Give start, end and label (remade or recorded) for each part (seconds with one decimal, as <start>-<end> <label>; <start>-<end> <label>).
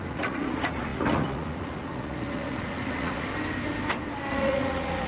0.0-3.3 remade; 3.3-4.3 recorded; 4.3-5.1 remade